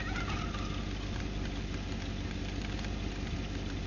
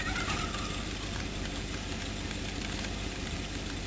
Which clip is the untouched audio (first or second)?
first